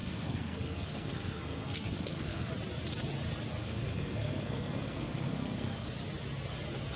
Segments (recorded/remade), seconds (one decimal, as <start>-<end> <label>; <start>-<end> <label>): 0.0-2.5 remade; 2.5-3.6 recorded; 3.6-5.9 remade; 5.9-7.0 recorded